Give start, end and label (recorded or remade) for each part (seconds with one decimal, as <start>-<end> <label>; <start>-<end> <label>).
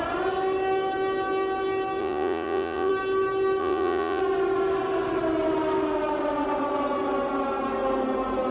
0.0-2.0 recorded; 2.0-2.9 remade; 2.9-3.6 recorded; 3.6-4.2 remade; 4.2-8.5 recorded